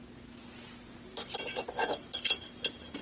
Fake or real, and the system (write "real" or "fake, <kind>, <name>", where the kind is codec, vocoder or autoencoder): real